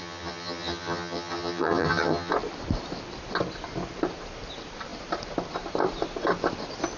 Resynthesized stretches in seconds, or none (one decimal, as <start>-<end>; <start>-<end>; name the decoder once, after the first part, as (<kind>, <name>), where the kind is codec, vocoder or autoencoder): 0.0-2.3 (vocoder, HiFi-GAN)